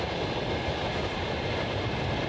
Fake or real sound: real